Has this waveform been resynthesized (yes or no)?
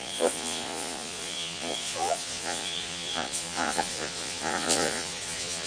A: yes